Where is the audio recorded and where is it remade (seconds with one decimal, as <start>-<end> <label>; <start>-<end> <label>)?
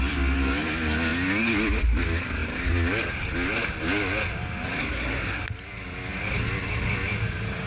0.0-4.8 recorded; 4.8-5.4 remade; 5.4-7.7 recorded